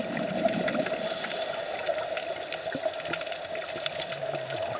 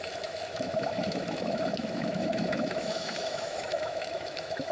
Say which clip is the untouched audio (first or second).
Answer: first